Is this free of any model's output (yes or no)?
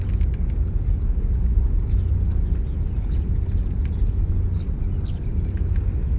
yes